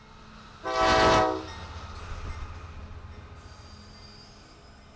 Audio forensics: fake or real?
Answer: real